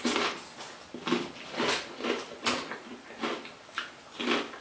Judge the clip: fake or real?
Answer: real